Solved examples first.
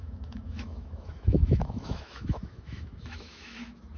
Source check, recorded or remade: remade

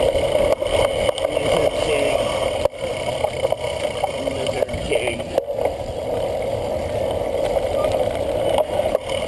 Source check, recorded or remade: recorded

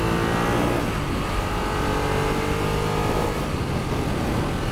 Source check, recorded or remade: recorded